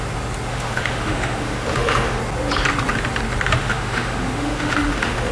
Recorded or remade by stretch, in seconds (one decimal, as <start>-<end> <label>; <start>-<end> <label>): 0.0-0.5 recorded; 0.5-2.2 remade; 2.2-3.6 recorded; 3.6-5.3 remade